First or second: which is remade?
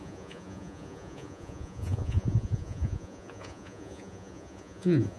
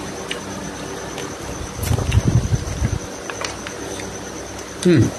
first